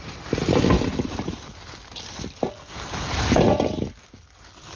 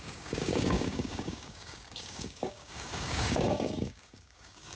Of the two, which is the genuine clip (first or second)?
first